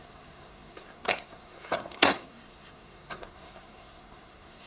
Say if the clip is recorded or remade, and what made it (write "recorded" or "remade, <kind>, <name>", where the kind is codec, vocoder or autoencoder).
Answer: remade, codec, SNAC